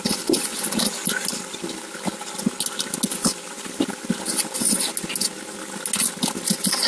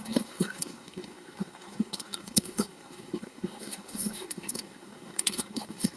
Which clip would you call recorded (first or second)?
first